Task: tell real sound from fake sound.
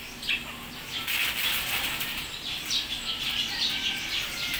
real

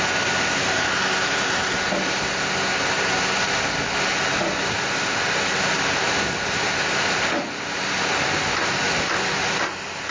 real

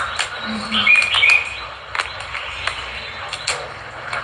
real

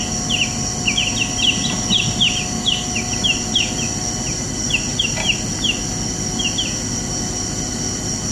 real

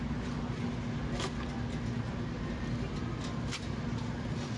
real